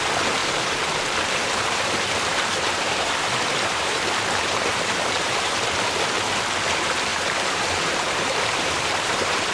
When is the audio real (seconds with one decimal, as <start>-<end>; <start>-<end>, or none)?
0.0-0.4; 5.5-7.1